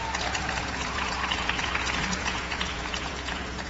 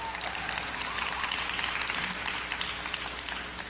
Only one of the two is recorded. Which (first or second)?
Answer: second